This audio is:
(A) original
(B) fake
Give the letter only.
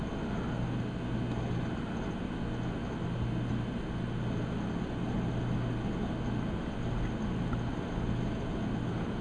A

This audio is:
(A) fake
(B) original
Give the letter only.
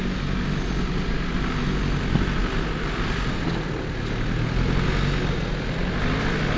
B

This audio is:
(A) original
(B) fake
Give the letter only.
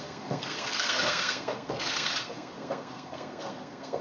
B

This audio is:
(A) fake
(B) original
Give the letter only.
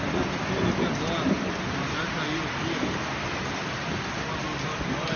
B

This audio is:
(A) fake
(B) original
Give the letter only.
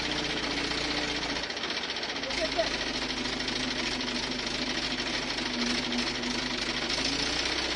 B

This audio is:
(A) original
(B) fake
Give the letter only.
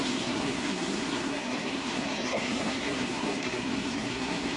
B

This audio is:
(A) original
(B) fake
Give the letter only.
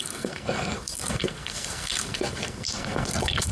B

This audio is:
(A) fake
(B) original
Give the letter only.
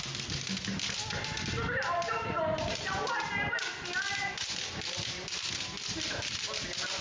B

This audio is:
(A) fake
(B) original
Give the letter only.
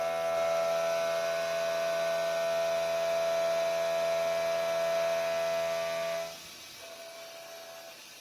B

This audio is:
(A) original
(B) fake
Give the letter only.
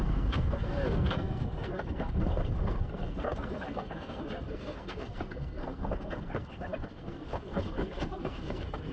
B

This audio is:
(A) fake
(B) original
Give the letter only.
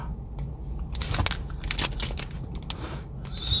B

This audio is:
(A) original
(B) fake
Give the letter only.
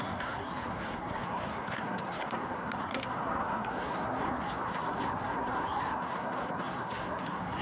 B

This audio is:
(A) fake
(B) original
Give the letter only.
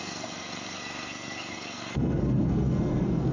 A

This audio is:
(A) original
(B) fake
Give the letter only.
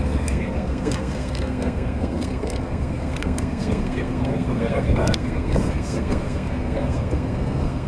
B